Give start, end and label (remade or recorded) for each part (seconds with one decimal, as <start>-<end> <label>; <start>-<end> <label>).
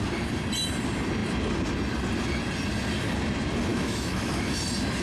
0.0-3.7 recorded; 3.7-4.6 remade; 4.6-5.0 recorded